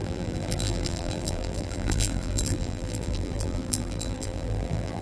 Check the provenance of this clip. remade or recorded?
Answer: remade